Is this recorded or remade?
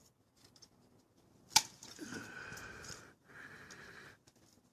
recorded